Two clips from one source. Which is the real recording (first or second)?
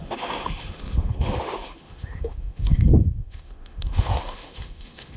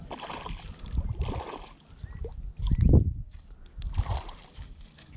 second